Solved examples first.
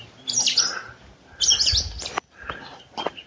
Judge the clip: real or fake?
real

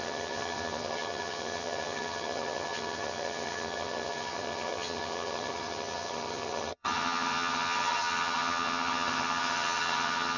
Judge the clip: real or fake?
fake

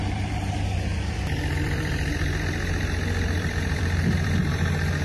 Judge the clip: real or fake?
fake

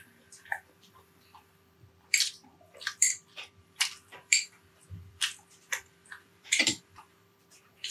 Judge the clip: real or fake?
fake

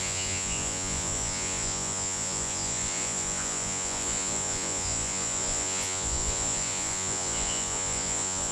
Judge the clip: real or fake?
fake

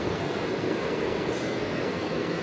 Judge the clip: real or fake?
fake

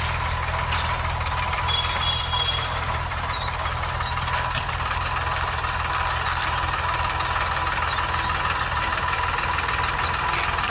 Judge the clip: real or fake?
real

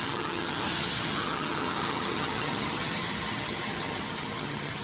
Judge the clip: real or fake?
fake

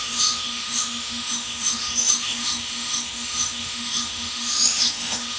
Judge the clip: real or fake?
fake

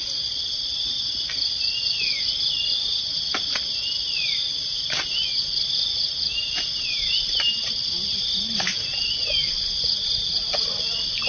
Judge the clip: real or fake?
real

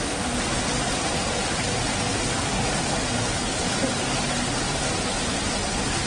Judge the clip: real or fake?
real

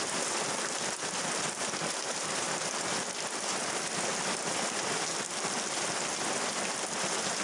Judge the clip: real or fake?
real